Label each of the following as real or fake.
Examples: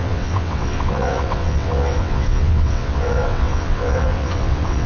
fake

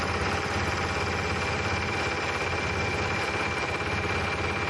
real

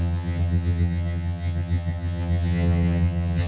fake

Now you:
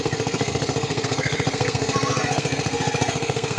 fake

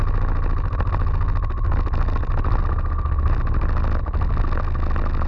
real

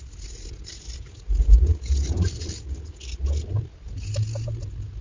real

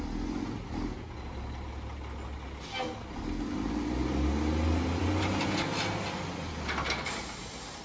real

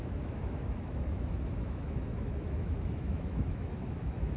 fake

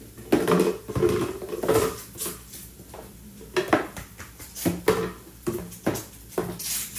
real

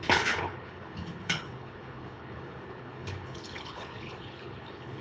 fake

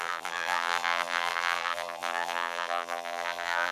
fake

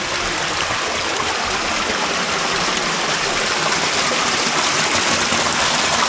real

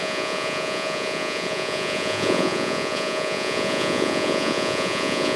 fake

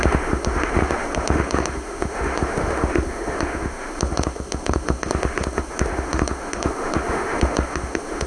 fake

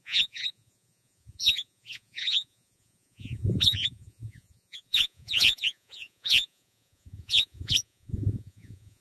fake